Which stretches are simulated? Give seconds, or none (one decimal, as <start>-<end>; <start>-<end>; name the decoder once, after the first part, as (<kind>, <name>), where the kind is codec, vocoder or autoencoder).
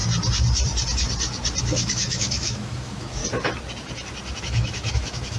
1.6-3.2 (autoencoder, DAC-VAE); 4.4-5.4